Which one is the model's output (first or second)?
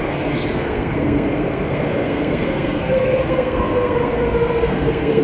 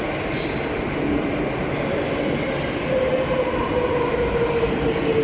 first